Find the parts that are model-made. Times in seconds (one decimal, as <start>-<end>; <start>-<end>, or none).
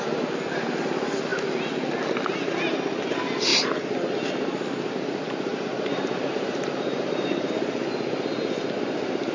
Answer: 5.5-7.6